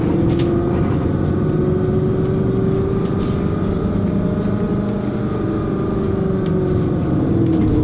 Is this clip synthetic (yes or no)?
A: no